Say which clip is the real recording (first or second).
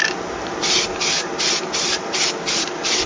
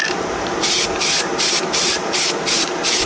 first